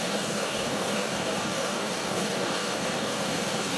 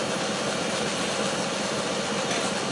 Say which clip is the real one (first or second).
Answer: second